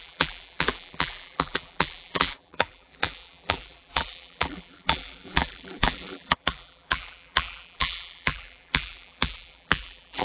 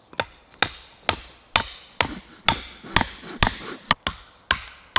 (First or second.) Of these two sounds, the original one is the second